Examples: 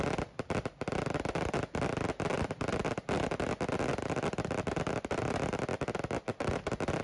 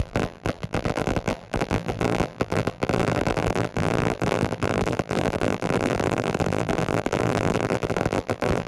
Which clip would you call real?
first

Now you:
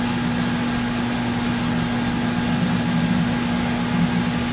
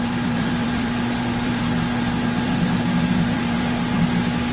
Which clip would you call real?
first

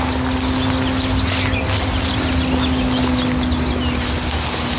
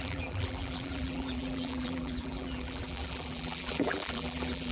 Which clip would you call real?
first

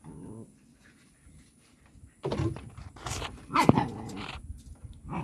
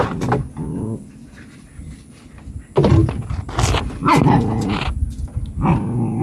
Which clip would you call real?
second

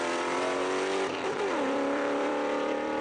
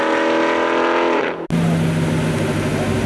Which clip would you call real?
second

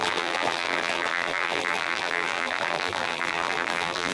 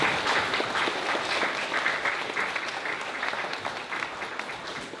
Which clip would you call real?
second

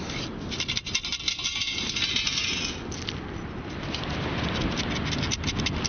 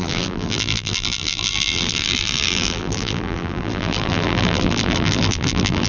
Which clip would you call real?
first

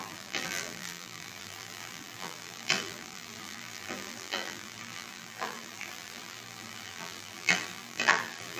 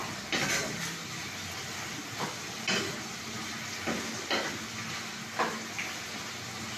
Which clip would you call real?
second